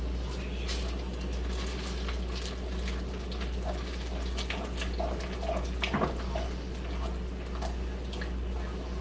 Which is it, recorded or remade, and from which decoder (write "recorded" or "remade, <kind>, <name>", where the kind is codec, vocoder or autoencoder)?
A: recorded